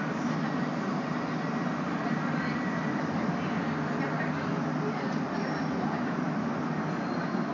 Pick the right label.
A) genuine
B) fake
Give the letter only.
A